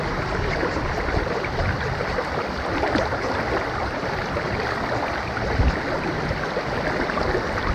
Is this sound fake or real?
real